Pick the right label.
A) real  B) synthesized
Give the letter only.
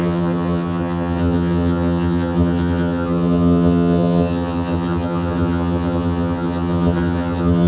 B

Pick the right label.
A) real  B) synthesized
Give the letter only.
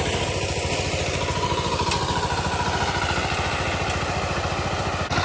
A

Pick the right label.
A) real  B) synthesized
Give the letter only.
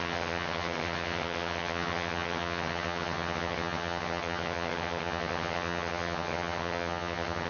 B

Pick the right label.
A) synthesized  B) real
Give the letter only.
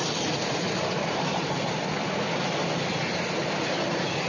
B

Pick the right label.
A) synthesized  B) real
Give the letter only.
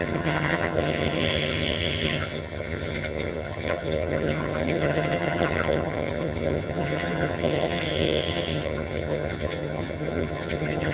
A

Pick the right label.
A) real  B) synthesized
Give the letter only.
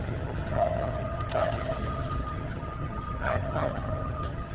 B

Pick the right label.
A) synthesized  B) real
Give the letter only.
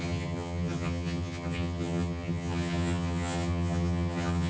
A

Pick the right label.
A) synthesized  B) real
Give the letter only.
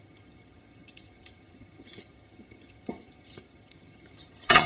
A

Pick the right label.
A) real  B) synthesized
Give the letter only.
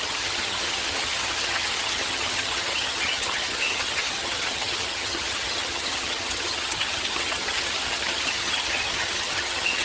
B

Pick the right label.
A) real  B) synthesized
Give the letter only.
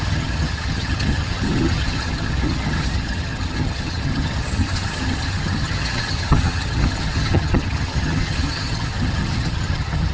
B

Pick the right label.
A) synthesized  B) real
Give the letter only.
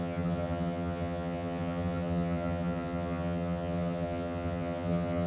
A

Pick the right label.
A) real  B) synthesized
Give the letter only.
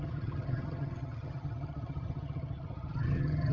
B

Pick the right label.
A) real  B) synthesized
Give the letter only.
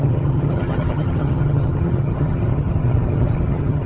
B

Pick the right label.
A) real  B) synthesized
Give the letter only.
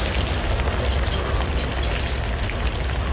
A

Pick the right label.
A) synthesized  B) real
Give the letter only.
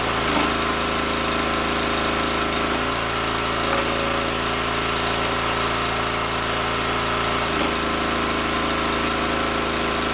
B